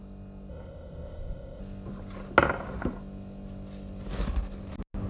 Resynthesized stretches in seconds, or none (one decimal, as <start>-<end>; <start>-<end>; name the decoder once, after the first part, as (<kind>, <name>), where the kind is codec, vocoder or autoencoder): 0.5-1.6 (codec, ZipCodec)